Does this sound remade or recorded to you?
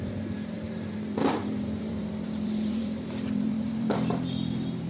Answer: remade